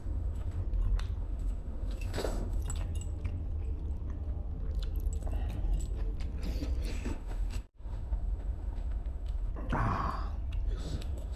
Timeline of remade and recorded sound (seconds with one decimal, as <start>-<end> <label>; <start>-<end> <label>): 0.0-0.6 remade; 0.6-1.2 recorded; 1.2-2.6 remade; 2.6-6.9 recorded; 6.9-9.5 remade; 9.5-10.8 recorded; 10.8-11.4 remade